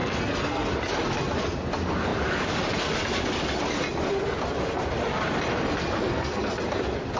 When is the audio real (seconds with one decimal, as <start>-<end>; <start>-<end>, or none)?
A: 0.7-6.1; 6.6-7.2